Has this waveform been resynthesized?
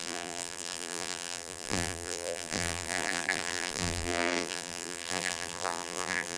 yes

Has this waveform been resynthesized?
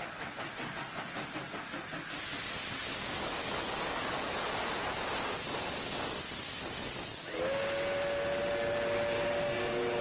no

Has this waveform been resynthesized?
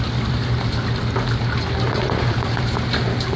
no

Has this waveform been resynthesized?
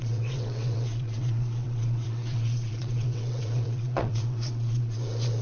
yes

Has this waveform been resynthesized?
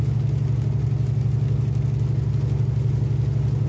no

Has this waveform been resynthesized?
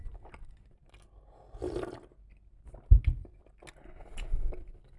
no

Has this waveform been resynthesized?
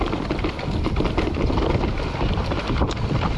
no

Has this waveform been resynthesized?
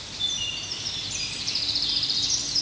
yes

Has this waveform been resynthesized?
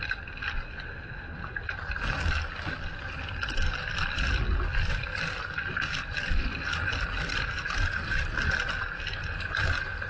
no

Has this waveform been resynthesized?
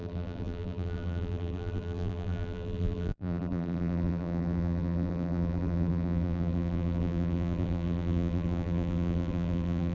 yes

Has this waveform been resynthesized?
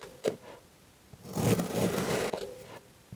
no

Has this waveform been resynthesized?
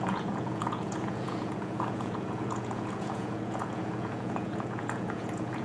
yes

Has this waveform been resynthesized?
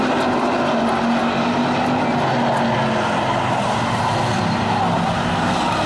no